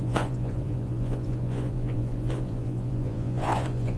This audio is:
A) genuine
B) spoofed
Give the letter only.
B